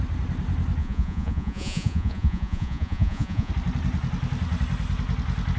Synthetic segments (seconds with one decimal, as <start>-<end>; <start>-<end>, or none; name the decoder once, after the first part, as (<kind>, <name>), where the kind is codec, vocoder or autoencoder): 0.8-3.5 (vocoder, Vocos)